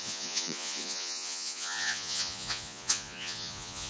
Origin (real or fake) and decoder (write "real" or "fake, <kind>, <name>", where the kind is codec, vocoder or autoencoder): fake, vocoder, Vocos